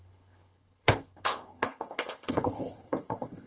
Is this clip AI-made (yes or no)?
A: yes